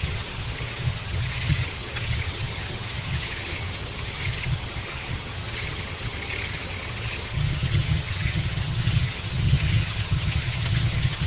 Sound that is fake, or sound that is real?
fake